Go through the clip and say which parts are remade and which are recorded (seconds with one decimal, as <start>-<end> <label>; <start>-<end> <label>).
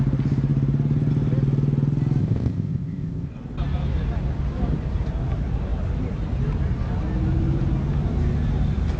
0.0-2.2 recorded; 2.2-3.3 remade; 3.3-9.0 recorded